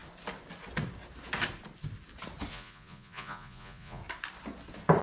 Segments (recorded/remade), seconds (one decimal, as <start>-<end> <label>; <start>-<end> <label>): 0.0-2.5 recorded; 2.5-4.0 remade; 4.0-5.0 recorded